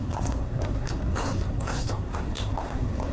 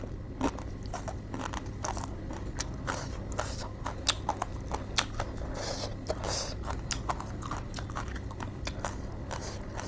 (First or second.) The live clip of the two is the second